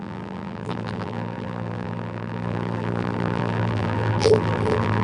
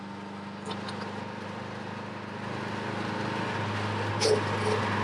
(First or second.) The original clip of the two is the second